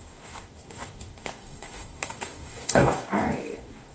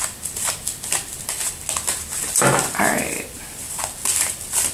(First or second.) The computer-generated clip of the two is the first